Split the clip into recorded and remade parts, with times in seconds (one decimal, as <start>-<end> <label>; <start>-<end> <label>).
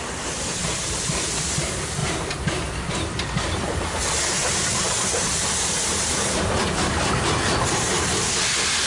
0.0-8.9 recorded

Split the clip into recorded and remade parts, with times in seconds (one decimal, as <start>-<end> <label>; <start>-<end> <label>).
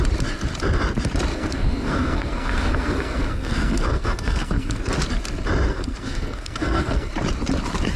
0.0-1.3 recorded; 1.3-4.8 remade; 4.8-5.7 recorded; 5.7-7.1 remade; 7.1-8.0 recorded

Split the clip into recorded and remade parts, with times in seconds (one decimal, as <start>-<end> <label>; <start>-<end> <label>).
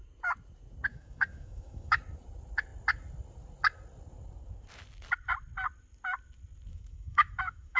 0.0-0.9 recorded; 0.9-2.0 remade; 2.0-6.7 recorded; 6.7-7.8 remade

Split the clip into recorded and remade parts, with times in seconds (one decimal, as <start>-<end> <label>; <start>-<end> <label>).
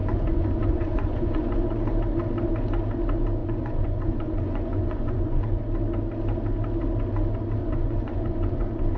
0.0-1.9 remade; 1.9-3.4 recorded; 3.4-5.6 remade; 5.6-7.6 recorded; 7.6-9.0 remade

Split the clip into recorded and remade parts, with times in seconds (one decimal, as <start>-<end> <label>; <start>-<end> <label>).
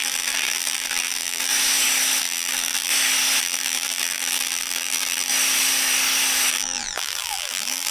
0.0-1.5 remade; 1.5-2.2 recorded; 2.2-2.9 remade; 2.9-3.4 recorded; 3.4-5.3 remade; 5.3-6.5 recorded; 6.5-7.9 remade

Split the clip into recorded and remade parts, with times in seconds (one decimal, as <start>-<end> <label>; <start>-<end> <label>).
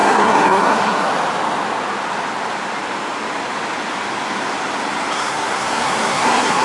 0.0-1.1 remade; 1.1-5.1 recorded; 5.1-6.6 remade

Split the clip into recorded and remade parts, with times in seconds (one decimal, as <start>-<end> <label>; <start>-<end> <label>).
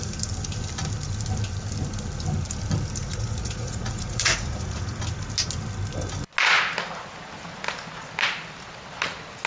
0.0-3.0 recorded; 3.0-5.0 remade; 5.0-9.5 recorded